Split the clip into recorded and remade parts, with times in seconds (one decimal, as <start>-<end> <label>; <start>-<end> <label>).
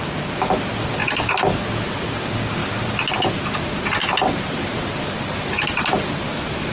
0.0-6.7 recorded